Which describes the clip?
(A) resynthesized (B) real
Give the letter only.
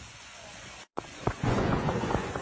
A